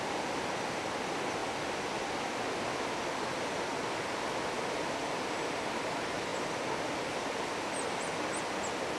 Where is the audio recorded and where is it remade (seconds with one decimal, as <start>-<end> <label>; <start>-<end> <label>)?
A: 0.0-9.0 recorded

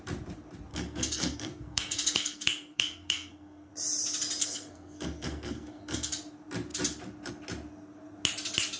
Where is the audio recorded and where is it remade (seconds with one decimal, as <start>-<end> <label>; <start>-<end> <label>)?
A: 0.0-0.7 recorded; 0.7-3.7 remade; 3.7-4.4 recorded; 4.4-6.1 remade; 6.1-8.8 recorded

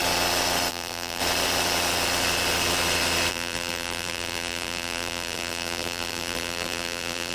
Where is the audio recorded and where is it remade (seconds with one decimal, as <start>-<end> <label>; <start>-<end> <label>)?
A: 0.0-0.7 recorded; 0.7-1.2 remade; 1.2-3.3 recorded; 3.3-7.3 remade

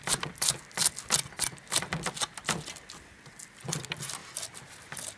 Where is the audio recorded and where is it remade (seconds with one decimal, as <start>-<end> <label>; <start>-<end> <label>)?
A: 0.0-5.2 recorded

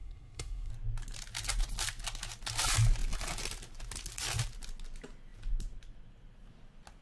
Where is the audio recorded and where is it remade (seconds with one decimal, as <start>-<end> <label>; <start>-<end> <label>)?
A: 0.0-0.7 remade; 0.7-7.0 recorded

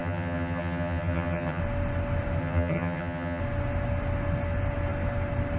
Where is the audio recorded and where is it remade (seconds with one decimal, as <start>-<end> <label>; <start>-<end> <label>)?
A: 0.0-1.6 remade; 1.6-2.4 recorded; 2.4-3.4 remade; 3.4-5.6 recorded

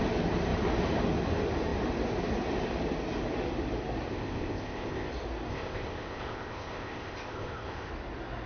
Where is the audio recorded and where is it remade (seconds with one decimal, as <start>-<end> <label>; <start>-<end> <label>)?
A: 0.0-4.1 recorded; 4.1-5.1 remade; 5.1-5.5 recorded; 5.5-7.9 remade; 7.9-8.5 recorded